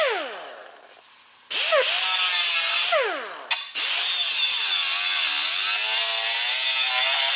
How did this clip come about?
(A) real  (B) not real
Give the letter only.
A